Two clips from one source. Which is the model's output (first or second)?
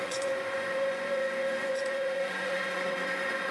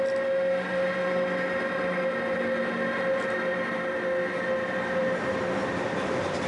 first